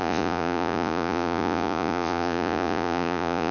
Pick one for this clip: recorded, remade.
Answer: remade